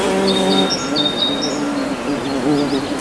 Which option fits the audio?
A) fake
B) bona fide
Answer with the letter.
B